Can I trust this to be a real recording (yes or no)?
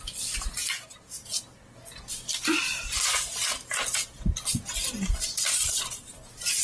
yes